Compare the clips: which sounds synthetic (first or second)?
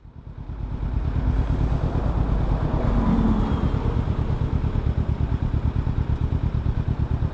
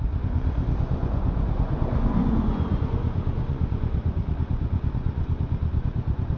second